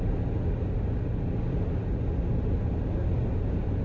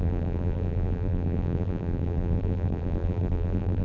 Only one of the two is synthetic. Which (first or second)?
second